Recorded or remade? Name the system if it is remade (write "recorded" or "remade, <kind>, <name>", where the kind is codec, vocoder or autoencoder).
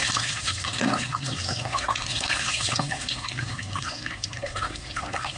remade, codec, SNAC